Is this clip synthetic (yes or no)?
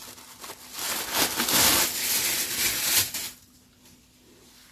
no